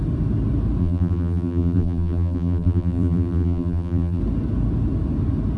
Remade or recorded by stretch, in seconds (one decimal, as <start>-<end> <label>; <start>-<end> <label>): 0.0-0.8 recorded; 0.8-4.2 remade; 4.2-5.6 recorded